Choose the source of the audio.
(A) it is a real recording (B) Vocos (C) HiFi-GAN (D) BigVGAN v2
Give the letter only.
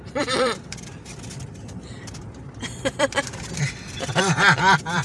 D